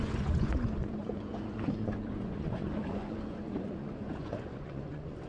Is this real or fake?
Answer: fake